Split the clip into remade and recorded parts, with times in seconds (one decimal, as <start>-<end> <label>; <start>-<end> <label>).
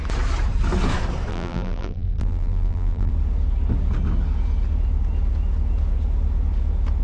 0.0-1.3 recorded; 1.3-3.1 remade; 3.1-7.0 recorded